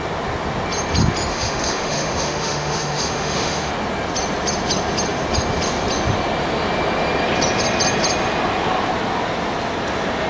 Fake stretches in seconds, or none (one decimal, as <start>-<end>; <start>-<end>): 1.3-3.7